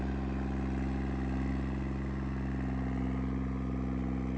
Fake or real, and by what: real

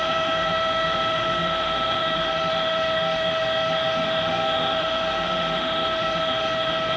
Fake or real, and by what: fake, autoencoder, DAC-VAE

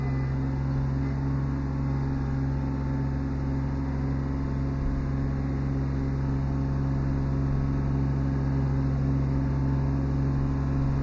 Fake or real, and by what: real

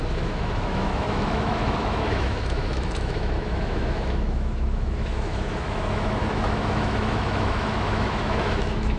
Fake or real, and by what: fake, autoencoder, DAC-VAE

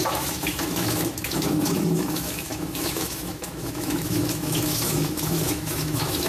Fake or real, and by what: fake, autoencoder, DAC-VAE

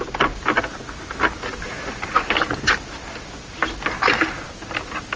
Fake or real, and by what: real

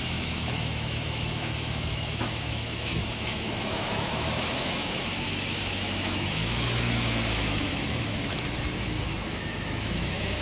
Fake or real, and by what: fake, autoencoder, DAC-VAE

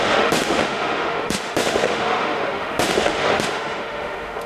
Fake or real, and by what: fake, autoencoder, DAC-VAE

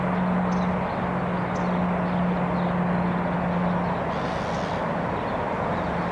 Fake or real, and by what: real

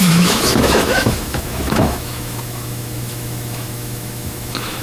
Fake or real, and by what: fake, autoencoder, DAC-VAE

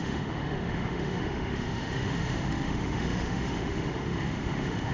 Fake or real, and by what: fake, autoencoder, DAC-VAE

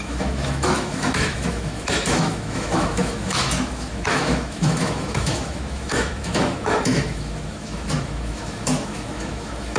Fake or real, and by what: fake, autoencoder, DAC-VAE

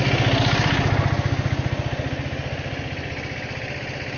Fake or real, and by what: real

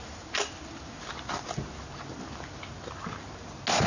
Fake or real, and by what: real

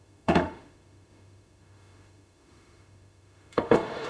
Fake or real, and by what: fake, autoencoder, DAC-VAE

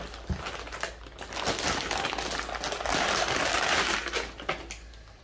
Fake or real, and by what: real